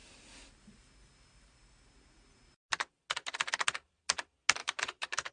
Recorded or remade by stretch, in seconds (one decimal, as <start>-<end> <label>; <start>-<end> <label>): 0.0-4.6 recorded; 4.6-5.3 remade